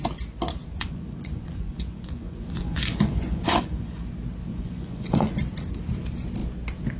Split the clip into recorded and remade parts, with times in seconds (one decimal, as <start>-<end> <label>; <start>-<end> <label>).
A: 0.0-0.7 recorded; 0.7-4.0 remade; 4.0-4.5 recorded; 4.5-5.4 remade; 5.4-7.0 recorded